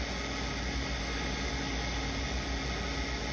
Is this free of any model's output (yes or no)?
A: yes